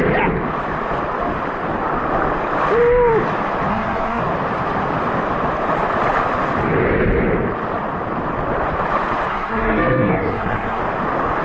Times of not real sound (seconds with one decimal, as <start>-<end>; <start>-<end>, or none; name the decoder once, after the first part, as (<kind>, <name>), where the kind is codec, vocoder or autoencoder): 3.7-4.2 (codec, SNAC); 9.3-10.8